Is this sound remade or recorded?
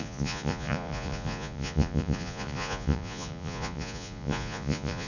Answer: remade